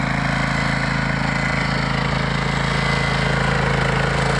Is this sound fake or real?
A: real